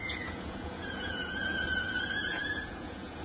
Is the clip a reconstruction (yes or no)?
yes